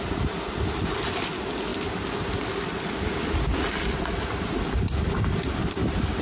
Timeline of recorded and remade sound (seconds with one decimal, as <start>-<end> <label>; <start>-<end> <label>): 0.0-6.2 recorded